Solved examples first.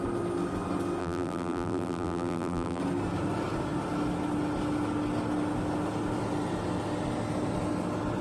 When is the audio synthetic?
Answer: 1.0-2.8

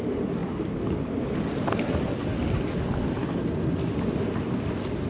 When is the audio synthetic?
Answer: none

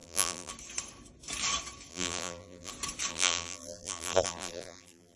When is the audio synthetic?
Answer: 0.0-0.5; 1.9-2.7; 3.1-5.2

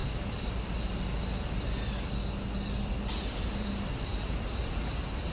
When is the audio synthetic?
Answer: 3.2-5.3